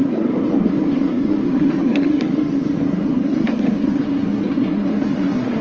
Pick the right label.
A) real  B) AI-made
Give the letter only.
B